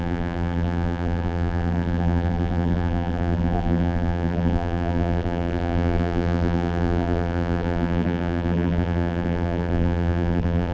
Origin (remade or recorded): remade